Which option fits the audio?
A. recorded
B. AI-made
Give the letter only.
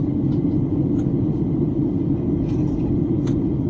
A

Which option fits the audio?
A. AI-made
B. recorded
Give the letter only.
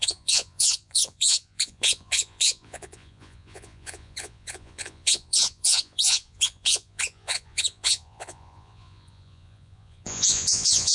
A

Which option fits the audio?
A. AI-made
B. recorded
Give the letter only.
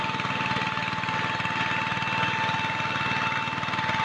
B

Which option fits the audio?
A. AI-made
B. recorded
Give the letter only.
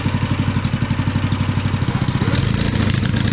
B